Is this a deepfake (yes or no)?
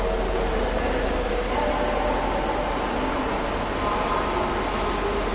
no